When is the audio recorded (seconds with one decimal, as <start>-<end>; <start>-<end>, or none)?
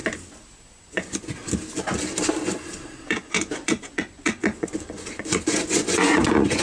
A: 0.0-0.7; 1.4-3.0